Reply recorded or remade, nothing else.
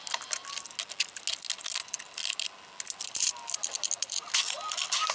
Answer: recorded